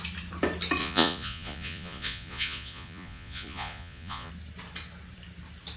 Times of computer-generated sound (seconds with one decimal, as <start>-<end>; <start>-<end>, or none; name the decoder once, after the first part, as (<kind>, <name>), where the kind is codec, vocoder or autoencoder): 0.8-4.3 (vocoder, Vocos)